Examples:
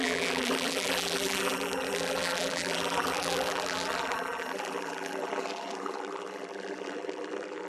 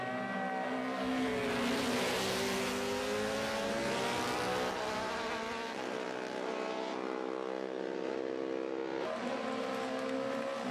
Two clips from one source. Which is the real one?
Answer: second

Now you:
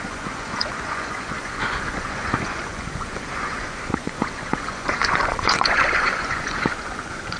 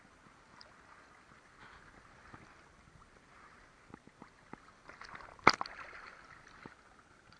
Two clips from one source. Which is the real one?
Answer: second